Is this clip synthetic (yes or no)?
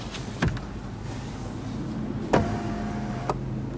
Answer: no